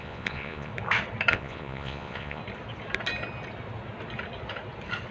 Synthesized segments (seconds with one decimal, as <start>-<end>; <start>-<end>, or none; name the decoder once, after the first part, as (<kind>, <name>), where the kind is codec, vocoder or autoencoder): 0.0-0.7 (vocoder, Vocos); 1.3-2.4